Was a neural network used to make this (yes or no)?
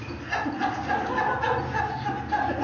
no